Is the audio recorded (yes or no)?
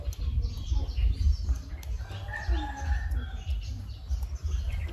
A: yes